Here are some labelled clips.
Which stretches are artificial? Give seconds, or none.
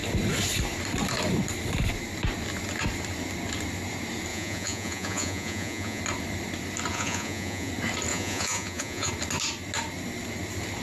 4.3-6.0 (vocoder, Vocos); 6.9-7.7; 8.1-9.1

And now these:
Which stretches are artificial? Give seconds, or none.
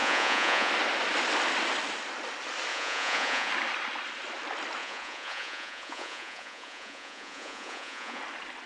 0.0-0.7 (vocoder, Vocos); 2.7-3.5; 4.8-8.2